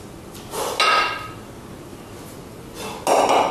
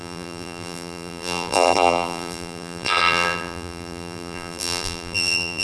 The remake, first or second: second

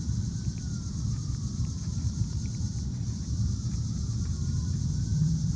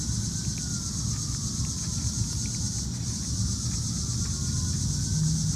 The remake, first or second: first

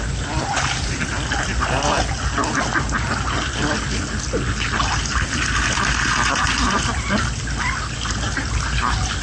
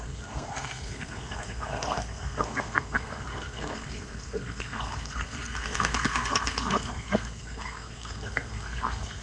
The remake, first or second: second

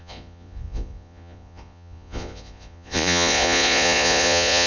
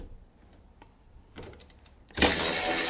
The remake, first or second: first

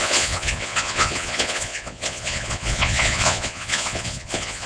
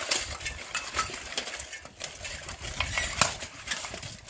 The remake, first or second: first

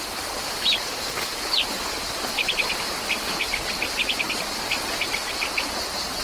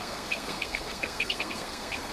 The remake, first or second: second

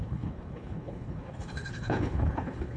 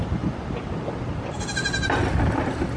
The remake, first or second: first